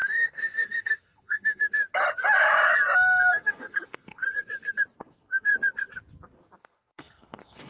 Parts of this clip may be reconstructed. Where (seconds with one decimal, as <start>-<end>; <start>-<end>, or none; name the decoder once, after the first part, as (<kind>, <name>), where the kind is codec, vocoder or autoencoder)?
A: 0.0-1.6 (codec, SNAC); 3.3-4.2; 5.0-5.5; 6.6-7.7